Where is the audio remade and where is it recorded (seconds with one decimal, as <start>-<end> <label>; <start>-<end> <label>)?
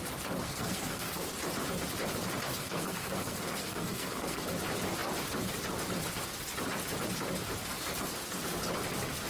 0.0-0.4 recorded; 0.4-1.2 remade; 1.2-2.5 recorded; 2.5-4.4 remade; 4.4-9.3 recorded